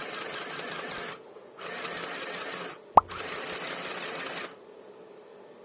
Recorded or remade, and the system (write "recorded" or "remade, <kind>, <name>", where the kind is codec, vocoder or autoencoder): recorded